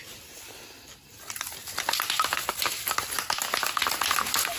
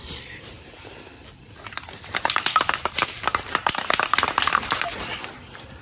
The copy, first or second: second